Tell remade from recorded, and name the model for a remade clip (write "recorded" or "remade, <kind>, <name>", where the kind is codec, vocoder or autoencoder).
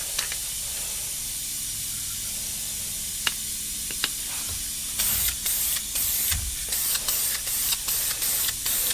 remade, vocoder, BigVGAN v2